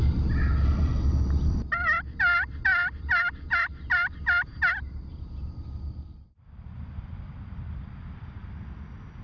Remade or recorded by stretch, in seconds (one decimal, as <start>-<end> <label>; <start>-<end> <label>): 0.0-5.1 recorded; 5.1-9.2 remade